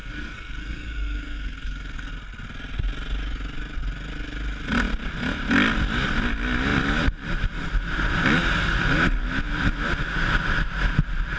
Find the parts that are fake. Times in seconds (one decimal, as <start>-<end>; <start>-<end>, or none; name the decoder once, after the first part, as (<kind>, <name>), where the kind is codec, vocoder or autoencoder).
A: 0.0-2.1 (codec, SNAC)